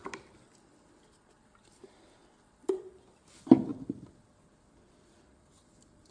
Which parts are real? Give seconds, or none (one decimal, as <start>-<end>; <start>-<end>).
3.7-4.3